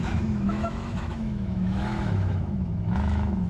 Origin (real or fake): fake